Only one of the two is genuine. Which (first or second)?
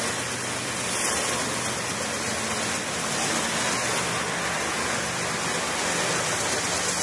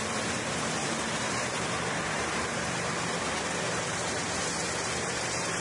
first